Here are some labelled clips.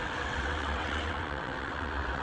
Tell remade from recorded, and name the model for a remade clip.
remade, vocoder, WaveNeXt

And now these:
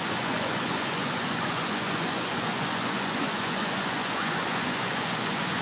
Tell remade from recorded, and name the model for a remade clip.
remade, vocoder, Vocos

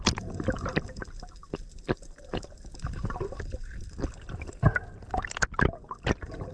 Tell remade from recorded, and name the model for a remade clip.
recorded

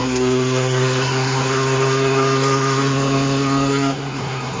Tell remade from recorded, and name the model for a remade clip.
remade, codec, SNAC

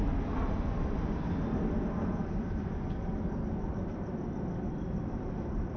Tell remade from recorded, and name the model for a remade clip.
recorded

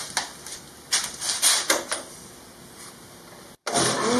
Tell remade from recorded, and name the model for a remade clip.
recorded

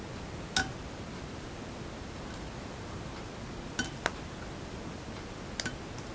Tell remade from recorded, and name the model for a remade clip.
recorded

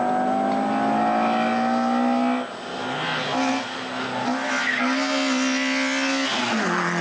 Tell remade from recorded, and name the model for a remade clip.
recorded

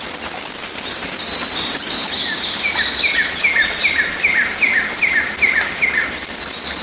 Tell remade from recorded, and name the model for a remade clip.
recorded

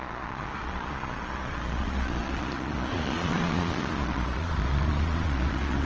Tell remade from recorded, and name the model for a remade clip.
remade, vocoder, Vocos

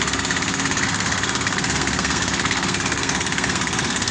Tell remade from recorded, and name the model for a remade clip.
remade, codec, SNAC